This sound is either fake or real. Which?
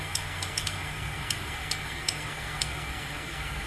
fake